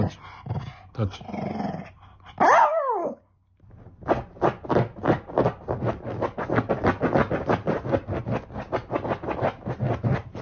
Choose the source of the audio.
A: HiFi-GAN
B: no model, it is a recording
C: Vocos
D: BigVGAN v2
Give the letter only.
B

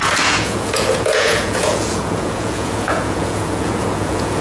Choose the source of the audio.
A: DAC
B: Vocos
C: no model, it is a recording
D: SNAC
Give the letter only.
B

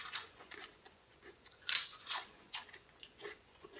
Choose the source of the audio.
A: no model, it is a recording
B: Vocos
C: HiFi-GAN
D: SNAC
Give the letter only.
B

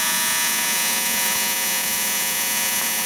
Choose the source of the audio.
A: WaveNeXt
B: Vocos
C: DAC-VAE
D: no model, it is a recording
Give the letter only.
B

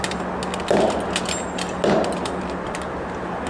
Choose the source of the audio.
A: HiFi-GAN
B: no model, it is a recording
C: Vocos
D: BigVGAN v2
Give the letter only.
B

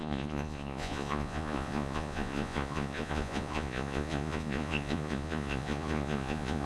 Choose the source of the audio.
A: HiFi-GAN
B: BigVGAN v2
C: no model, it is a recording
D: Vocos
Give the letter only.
D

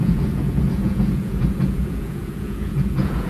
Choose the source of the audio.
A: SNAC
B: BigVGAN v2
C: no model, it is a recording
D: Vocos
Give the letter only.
D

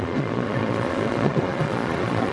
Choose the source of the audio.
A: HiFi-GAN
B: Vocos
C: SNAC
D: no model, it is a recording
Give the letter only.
B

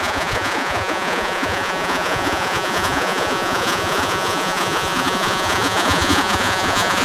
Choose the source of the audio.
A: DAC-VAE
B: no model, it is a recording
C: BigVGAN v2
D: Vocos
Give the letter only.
D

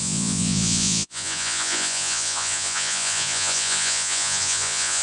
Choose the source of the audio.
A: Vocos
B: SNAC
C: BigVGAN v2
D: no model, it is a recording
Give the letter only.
A